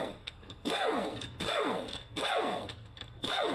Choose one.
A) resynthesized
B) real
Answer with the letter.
A